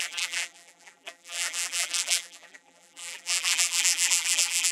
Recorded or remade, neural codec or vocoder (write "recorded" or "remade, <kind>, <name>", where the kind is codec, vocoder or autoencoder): remade, vocoder, BigVGAN v2